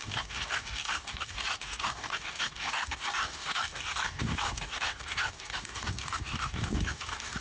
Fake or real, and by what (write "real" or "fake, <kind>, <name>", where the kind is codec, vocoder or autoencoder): fake, codec, DAC